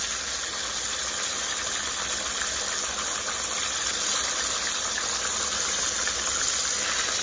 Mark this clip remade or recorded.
recorded